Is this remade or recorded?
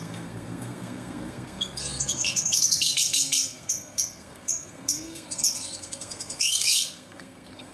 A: remade